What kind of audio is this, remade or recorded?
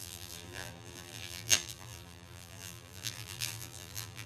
remade